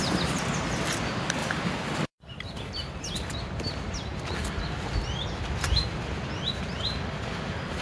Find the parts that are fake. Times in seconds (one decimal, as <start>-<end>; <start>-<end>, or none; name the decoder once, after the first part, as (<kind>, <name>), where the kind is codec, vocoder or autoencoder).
1.4-3.3 (vocoder, BigVGAN v2)

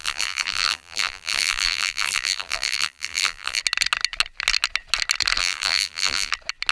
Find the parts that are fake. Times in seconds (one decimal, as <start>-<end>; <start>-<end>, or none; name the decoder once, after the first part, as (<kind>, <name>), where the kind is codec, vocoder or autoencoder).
0.0-3.6 (vocoder, BigVGAN v2); 5.4-6.3

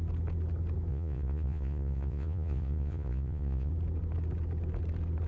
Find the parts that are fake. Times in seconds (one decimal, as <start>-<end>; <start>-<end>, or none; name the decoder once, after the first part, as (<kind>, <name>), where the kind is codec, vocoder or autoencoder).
0.9-3.7 (vocoder, Vocos)